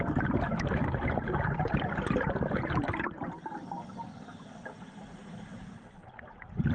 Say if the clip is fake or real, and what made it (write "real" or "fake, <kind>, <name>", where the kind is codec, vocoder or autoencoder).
real